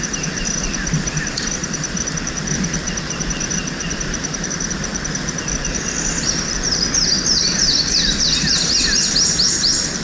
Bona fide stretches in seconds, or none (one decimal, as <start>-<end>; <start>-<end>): 4.9-7.4